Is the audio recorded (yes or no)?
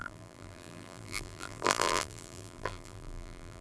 no